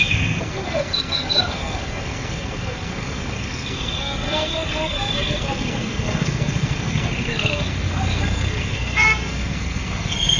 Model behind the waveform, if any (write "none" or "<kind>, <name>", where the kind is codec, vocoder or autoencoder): codec, SNAC